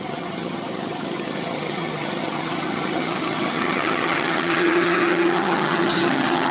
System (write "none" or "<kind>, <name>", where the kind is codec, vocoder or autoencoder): vocoder, HiFi-GAN